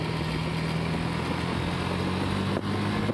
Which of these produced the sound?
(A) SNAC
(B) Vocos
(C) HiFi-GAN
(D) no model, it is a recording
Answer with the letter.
D